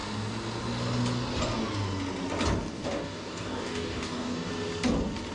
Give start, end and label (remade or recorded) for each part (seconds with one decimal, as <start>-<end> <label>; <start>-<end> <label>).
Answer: 0.0-2.7 recorded; 2.7-4.5 remade; 4.5-5.3 recorded

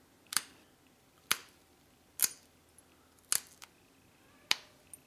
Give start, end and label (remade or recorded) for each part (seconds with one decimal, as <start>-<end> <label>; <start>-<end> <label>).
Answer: 0.0-5.1 recorded

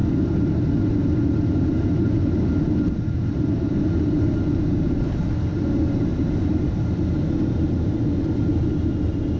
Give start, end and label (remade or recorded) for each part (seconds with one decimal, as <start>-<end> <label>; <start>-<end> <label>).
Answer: 0.0-9.4 recorded

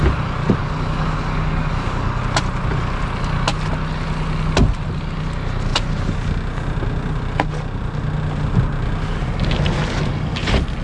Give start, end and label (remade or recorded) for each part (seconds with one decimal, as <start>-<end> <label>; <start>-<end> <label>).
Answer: 0.0-0.6 recorded; 0.6-2.2 remade; 2.2-10.8 recorded

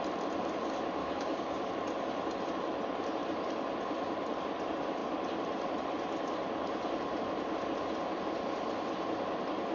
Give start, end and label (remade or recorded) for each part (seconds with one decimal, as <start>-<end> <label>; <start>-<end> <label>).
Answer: 0.0-1.0 recorded; 1.0-1.7 remade; 1.7-9.7 recorded

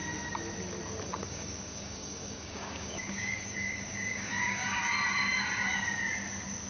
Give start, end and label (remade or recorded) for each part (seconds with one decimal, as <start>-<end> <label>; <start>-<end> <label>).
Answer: 0.0-1.1 recorded; 1.1-4.8 remade; 4.8-6.7 recorded

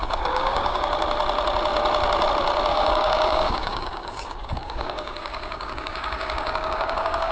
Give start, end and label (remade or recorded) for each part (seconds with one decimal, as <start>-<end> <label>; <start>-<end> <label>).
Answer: 0.0-0.8 remade; 0.8-2.7 recorded; 2.7-7.3 remade

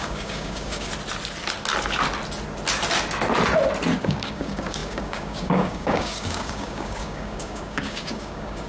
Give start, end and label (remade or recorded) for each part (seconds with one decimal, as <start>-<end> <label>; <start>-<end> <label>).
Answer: 0.0-0.9 remade; 0.9-4.0 recorded; 4.0-8.7 remade